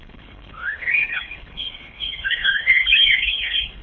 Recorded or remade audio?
remade